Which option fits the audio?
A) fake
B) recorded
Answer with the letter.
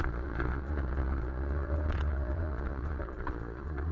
A